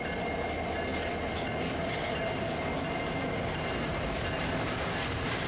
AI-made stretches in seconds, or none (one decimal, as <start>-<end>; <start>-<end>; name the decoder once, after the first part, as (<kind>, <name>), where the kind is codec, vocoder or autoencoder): none